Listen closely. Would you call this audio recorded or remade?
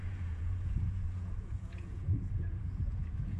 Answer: remade